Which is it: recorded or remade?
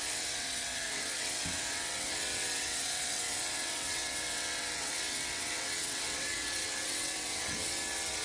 remade